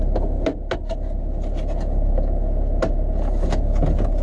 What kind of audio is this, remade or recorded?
recorded